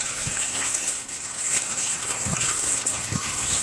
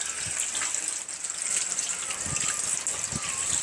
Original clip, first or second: second